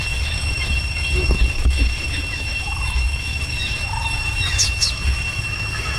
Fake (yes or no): yes